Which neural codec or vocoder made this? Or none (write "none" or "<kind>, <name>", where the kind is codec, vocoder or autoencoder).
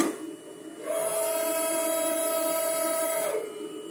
none